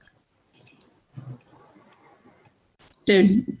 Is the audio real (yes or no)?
no